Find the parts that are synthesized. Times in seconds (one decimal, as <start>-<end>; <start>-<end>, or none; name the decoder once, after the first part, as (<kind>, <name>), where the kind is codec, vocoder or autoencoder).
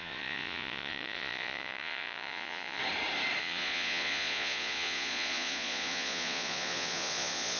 0.0-2.8 (vocoder, Vocos); 3.4-7.6